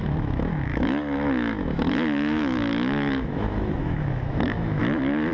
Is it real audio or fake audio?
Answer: fake